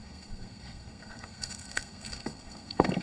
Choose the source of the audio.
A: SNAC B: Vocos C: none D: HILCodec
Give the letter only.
A